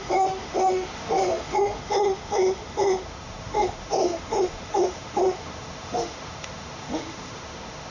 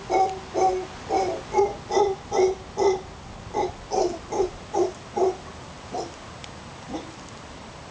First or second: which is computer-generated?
first